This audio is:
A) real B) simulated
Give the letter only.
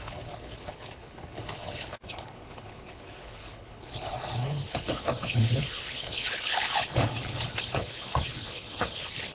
B